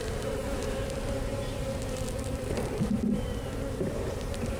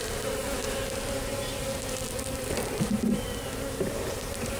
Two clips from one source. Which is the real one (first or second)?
second